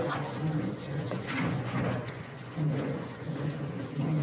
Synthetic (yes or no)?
yes